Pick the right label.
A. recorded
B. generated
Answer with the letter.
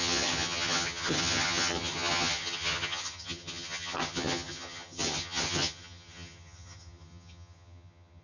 B